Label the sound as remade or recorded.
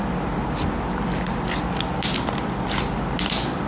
recorded